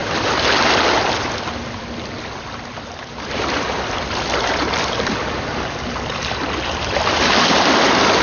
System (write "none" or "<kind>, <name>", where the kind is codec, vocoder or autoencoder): none